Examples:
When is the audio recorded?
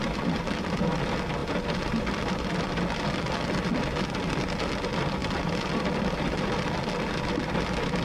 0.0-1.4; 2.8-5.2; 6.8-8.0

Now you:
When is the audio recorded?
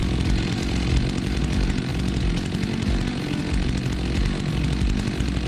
1.4-5.5